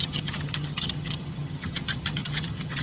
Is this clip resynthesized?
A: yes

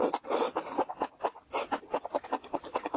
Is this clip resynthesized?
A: no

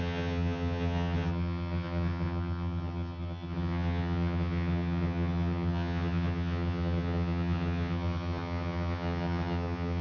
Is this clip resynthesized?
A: yes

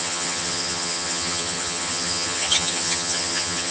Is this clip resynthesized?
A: yes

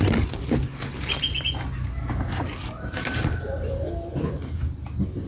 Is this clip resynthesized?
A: no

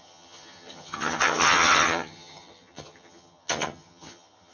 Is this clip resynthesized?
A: yes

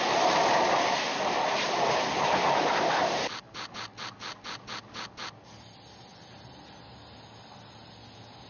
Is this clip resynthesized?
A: no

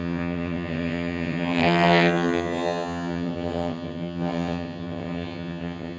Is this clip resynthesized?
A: yes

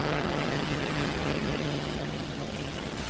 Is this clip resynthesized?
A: yes